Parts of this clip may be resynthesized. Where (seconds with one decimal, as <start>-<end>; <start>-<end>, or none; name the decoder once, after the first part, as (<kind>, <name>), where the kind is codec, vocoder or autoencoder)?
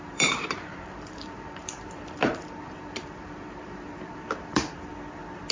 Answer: 0.0-4.9 (vocoder, BigVGAN v2)